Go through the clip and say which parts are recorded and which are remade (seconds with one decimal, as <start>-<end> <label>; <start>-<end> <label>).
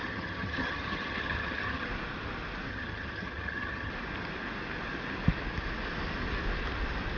0.0-1.9 remade; 1.9-2.7 recorded; 2.7-3.9 remade; 3.9-7.2 recorded